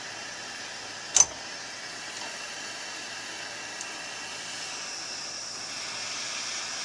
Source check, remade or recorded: recorded